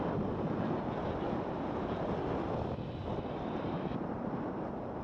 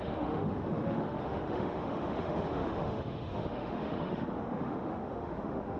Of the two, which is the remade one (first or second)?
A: second